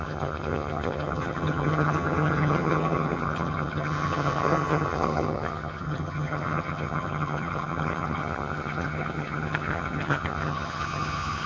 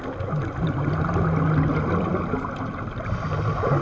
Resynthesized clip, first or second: first